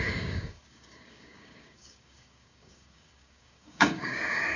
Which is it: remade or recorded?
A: remade